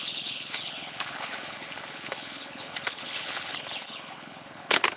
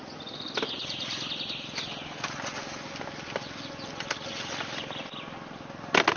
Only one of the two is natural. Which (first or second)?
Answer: second